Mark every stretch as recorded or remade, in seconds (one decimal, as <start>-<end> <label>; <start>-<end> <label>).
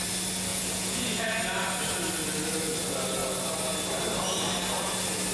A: 0.0-0.5 recorded; 0.5-1.4 remade; 1.4-5.3 recorded